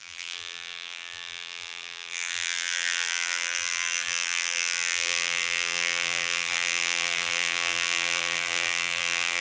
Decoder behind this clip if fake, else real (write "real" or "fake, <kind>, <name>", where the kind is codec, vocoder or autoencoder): fake, vocoder, BigVGAN v2